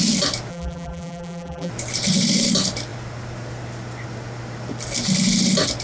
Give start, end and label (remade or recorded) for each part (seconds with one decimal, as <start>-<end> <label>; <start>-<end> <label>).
0.0-0.5 recorded; 0.5-1.7 remade; 1.7-5.8 recorded